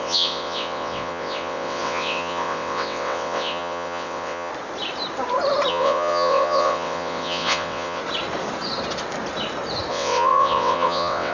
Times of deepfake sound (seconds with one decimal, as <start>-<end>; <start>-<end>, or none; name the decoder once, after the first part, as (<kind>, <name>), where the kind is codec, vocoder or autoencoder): 0.0-4.5 (vocoder, WaveNeXt); 5.7-8.0; 9.9-11.3